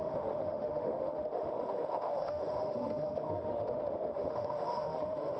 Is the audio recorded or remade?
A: remade